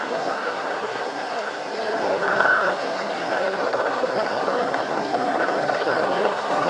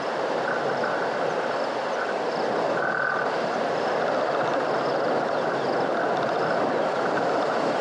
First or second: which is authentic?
second